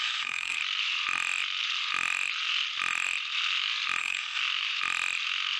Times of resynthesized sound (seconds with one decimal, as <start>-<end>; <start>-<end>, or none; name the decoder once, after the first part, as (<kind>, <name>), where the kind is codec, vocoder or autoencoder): 0.0-0.6 (codec, SNAC); 4.0-4.4